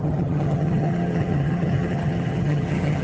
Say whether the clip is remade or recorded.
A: remade